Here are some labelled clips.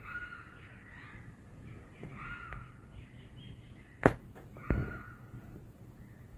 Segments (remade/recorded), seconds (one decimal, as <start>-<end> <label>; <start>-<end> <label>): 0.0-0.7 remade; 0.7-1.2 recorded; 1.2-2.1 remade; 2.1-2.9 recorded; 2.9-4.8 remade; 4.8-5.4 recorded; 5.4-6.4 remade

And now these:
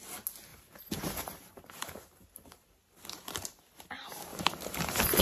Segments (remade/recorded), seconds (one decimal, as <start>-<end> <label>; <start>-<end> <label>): 0.0-0.5 recorded; 0.5-3.6 remade; 3.6-4.3 recorded; 4.3-5.2 remade

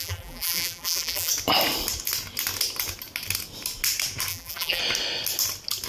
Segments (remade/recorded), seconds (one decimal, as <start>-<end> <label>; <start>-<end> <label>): 0.0-1.3 remade; 1.3-4.3 recorded; 4.3-4.8 remade; 4.8-5.9 recorded

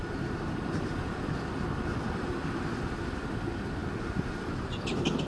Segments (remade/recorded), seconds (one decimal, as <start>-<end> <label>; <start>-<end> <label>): 0.0-5.3 remade

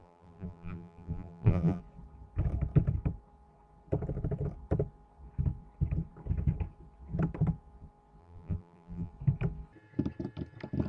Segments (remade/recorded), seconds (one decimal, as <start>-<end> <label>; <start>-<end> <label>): 0.0-1.8 remade; 1.8-8.2 recorded; 8.2-9.1 remade; 9.1-10.9 recorded